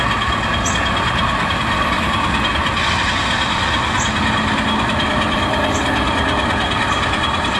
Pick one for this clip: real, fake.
real